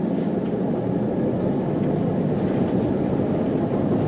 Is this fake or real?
fake